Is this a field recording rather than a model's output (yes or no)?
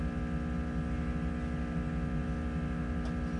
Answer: yes